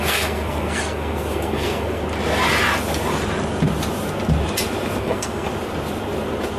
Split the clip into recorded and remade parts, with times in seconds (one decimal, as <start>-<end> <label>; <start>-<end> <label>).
0.0-2.0 remade; 2.0-5.0 recorded; 5.0-5.5 remade; 5.5-6.6 recorded